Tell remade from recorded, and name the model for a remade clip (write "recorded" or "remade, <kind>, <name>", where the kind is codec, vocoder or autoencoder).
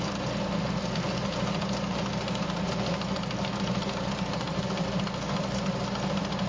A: recorded